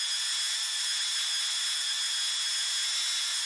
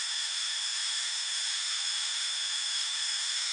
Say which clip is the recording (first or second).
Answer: first